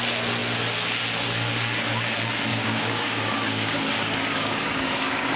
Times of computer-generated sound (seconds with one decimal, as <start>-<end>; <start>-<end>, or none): 2.5-5.4